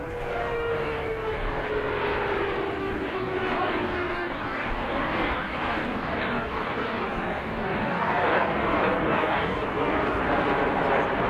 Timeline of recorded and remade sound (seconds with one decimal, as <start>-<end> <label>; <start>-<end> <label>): 0.0-1.7 remade; 1.7-2.8 recorded; 2.8-10.2 remade; 10.2-11.3 recorded